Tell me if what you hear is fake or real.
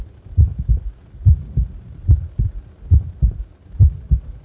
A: real